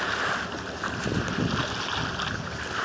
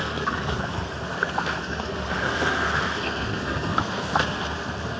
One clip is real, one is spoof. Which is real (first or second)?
first